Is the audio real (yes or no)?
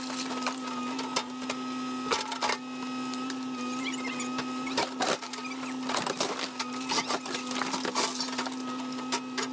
yes